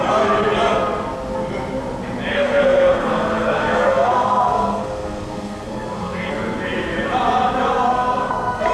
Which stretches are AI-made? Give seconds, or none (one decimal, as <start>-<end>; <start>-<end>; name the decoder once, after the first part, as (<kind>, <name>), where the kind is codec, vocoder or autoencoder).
2.3-6.3 (codec, SNAC); 7.9-8.7